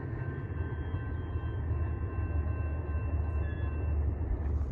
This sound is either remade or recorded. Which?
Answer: recorded